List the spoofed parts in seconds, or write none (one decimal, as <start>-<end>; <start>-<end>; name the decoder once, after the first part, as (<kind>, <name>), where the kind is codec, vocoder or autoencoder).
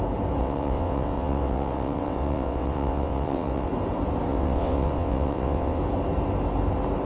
0.4-3.7 (vocoder, WaveNeXt); 4.3-5.8